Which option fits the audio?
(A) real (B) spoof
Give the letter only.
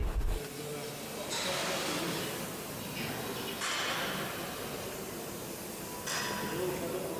A